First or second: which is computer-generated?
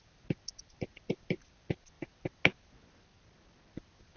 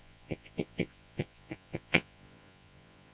second